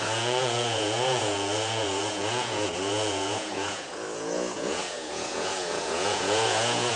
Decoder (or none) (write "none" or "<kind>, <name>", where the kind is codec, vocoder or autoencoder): vocoder, Vocos